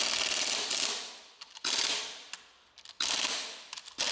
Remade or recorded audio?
recorded